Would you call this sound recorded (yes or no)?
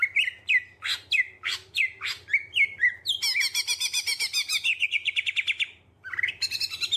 yes